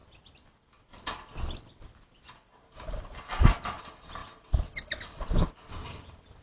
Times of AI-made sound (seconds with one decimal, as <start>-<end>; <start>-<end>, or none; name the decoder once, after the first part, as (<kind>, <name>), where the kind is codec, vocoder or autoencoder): none